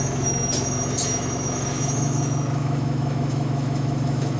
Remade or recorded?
remade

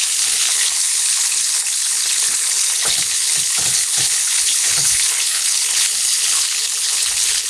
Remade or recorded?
remade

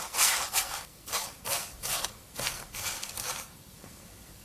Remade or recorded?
remade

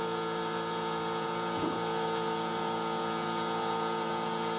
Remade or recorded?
remade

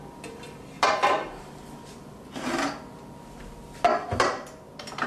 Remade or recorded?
recorded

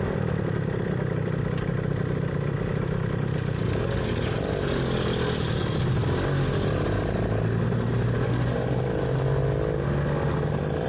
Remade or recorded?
recorded